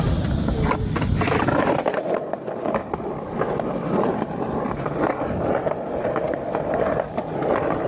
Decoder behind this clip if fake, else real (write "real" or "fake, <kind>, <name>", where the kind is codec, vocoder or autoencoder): fake, vocoder, BigVGAN v2